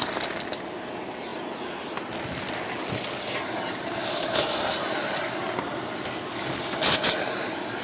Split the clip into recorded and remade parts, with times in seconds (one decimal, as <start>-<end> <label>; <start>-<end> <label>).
0.0-7.8 recorded